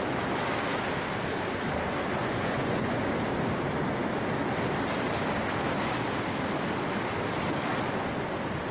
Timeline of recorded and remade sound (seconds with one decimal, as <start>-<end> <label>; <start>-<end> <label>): 0.0-2.2 recorded; 2.2-3.0 remade; 3.0-8.7 recorded

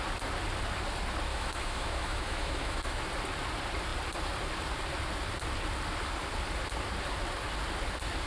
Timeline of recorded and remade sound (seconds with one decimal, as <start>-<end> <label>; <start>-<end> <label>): 0.0-1.3 recorded; 1.3-3.0 remade; 3.0-8.3 recorded

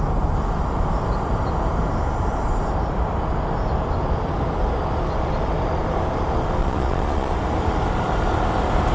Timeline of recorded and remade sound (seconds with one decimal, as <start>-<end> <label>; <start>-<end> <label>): 0.0-6.6 recorded; 6.6-7.3 remade; 7.3-8.9 recorded

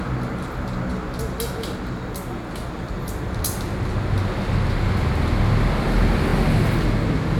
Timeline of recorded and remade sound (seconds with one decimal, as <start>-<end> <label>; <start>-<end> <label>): 0.0-7.4 recorded

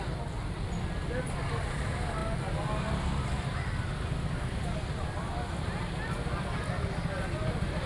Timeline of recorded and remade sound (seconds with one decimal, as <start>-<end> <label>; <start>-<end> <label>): 0.0-7.9 recorded

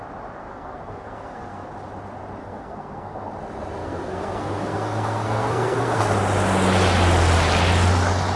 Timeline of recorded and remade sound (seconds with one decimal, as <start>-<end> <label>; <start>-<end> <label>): 0.0-0.4 recorded; 0.4-1.7 remade; 1.7-2.4 recorded; 2.4-3.3 remade; 3.3-3.8 recorded; 3.8-6.0 remade; 6.0-8.4 recorded

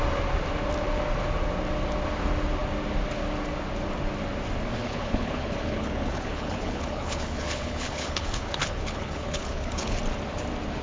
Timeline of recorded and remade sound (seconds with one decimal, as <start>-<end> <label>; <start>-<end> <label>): 0.0-4.8 recorded; 4.8-10.0 remade; 10.0-10.8 recorded